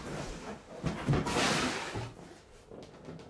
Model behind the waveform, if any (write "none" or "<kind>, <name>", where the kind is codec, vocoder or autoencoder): none